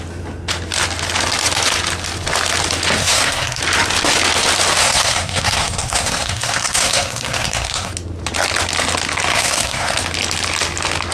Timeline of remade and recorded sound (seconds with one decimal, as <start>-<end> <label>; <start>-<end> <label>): 0.0-3.0 recorded; 3.0-3.6 remade; 3.6-4.8 recorded; 4.8-7.9 remade; 7.9-9.3 recorded; 9.3-10.0 remade; 10.0-11.1 recorded